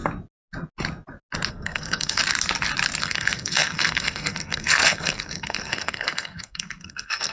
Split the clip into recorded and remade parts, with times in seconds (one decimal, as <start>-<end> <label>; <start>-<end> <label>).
0.0-1.5 recorded; 1.5-2.2 remade; 2.2-3.0 recorded; 3.0-7.3 remade